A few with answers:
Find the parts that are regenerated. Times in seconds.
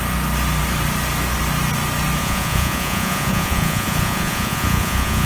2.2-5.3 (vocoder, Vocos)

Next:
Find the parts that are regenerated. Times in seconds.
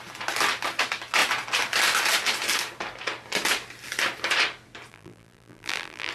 4.9-6.1 (vocoder, BigVGAN v2)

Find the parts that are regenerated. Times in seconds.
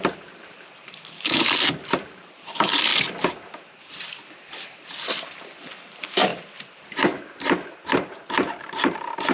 0.0-2.9 (vocoder, BigVGAN v2); 5.7-6.3; 7.9-9.3